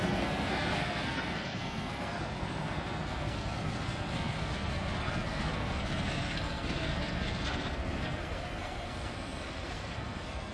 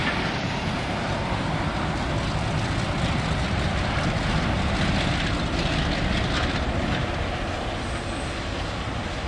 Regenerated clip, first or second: first